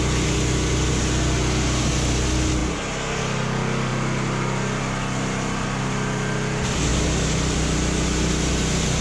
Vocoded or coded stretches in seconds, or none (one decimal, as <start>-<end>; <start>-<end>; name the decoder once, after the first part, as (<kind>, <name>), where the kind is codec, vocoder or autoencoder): none